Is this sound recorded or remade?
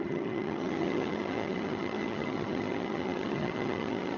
remade